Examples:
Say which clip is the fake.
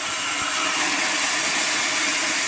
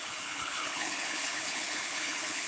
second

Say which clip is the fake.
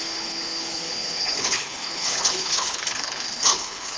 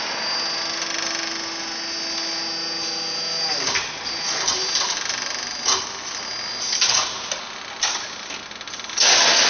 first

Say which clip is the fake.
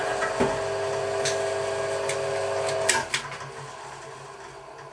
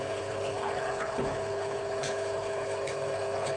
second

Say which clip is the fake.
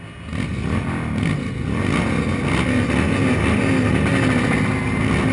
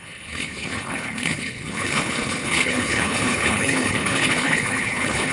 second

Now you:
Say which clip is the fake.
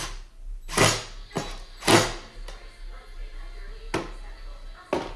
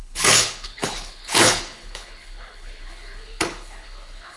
second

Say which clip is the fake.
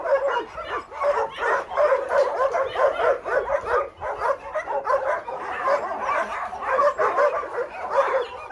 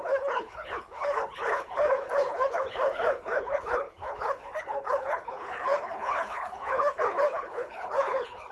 second